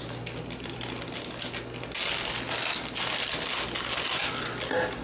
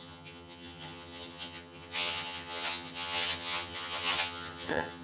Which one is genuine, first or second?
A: first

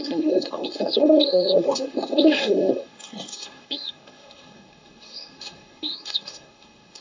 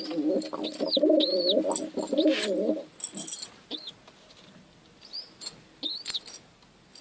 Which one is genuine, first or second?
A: second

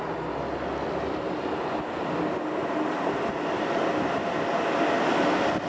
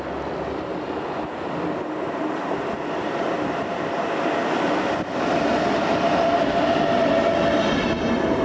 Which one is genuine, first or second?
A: first